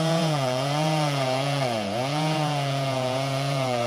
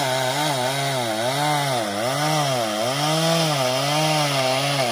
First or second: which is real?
second